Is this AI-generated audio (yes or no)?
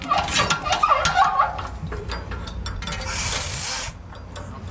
no